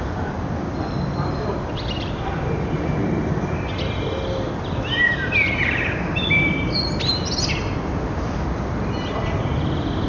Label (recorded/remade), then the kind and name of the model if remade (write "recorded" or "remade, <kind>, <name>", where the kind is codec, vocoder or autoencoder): recorded